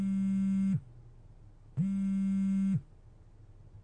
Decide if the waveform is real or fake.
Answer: real